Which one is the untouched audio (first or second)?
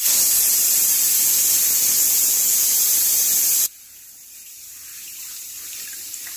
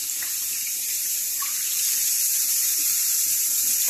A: first